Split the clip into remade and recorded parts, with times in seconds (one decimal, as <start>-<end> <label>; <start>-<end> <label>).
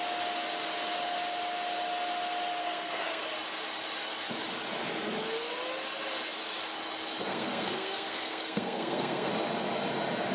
0.0-2.6 recorded; 2.6-3.2 remade; 3.2-7.3 recorded; 7.3-9.3 remade; 9.3-10.3 recorded